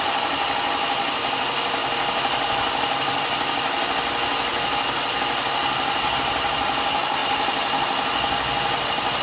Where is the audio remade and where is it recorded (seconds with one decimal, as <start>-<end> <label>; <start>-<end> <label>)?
0.0-9.2 recorded